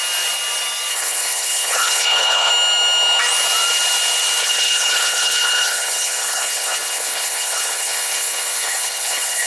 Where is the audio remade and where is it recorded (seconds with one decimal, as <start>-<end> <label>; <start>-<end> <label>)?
0.0-0.9 recorded; 0.9-2.5 remade; 2.5-4.4 recorded; 4.4-9.5 remade